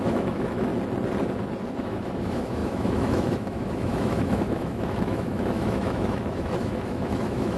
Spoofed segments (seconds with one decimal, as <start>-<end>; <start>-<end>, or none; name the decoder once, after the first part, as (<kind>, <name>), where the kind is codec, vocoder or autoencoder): 0.0-0.7 (autoencoder, DAC-VAE); 1.7-7.6

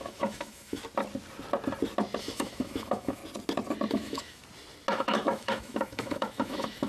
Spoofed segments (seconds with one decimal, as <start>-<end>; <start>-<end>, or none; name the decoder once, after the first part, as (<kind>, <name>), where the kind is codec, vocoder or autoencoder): 0.0-0.8 (autoencoder, DAC-VAE); 2.2-3.2; 3.9-4.4; 4.9-6.9